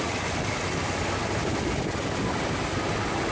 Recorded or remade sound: recorded